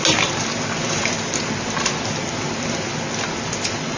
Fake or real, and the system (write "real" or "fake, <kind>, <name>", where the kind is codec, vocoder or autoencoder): real